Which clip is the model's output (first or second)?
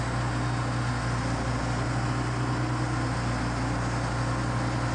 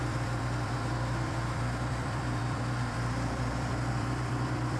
second